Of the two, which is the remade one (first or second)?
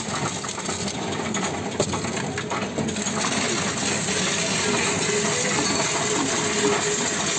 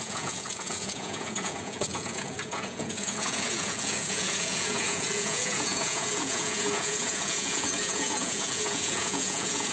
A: second